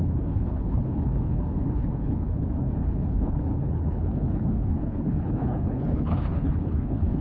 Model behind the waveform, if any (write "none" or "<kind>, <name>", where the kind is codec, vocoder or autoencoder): codec, HILCodec